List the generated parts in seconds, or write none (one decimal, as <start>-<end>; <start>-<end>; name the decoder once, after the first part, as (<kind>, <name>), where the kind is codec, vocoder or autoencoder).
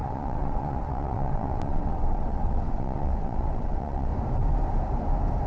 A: 0.0-4.1 (vocoder, WaveNeXt)